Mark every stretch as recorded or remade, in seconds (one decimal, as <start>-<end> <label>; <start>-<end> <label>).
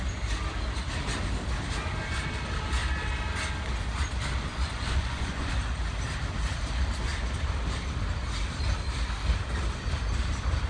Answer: 0.0-4.5 recorded; 4.5-5.5 remade; 5.5-10.7 recorded